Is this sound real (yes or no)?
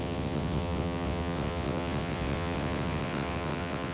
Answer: no